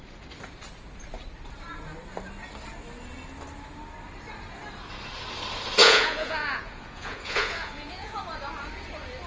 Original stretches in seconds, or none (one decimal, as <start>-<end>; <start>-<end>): 0.0-5.8; 8.2-9.3

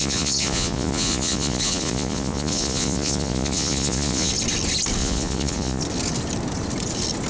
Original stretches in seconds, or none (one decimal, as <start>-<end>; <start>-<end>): 4.3-5.0; 5.8-7.3

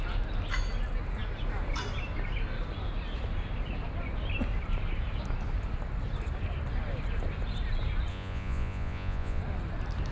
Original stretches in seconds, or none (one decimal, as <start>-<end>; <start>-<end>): 0.0-8.1; 9.4-10.1

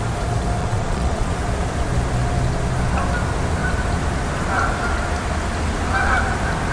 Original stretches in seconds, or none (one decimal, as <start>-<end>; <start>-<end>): 0.0-0.6; 1.3-6.7